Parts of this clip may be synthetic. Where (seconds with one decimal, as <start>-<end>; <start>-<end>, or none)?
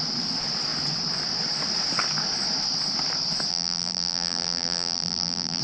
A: 3.5-5.6